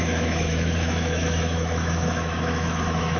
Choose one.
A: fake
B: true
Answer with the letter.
A